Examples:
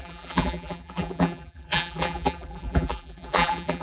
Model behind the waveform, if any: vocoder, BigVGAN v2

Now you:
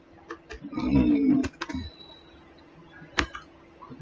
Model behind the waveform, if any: none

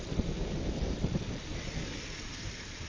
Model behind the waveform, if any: none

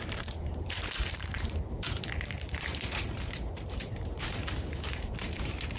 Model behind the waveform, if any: vocoder, BigVGAN v2